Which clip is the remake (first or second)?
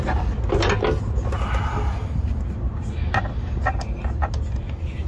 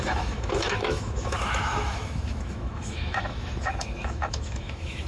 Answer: second